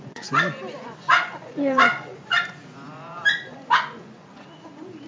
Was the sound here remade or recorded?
remade